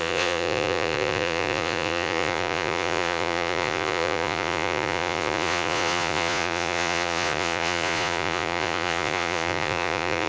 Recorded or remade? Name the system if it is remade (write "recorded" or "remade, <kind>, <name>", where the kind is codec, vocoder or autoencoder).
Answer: remade, vocoder, Vocos